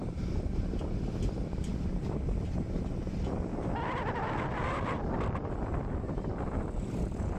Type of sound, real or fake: fake